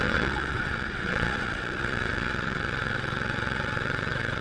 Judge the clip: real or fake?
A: fake